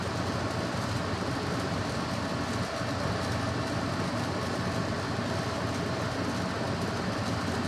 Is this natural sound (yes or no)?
yes